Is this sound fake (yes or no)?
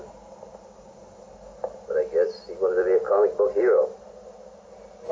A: no